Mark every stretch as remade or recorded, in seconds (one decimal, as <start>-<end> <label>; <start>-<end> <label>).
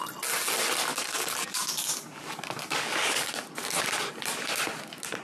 0.0-0.9 recorded; 0.9-3.3 remade; 3.3-5.2 recorded